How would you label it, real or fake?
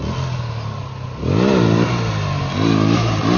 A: real